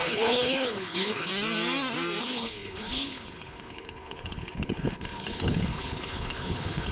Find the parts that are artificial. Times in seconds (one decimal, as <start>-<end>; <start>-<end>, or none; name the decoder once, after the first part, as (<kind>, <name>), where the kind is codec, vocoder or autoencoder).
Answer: 0.0-1.3 (codec, HILCodec); 2.2-6.9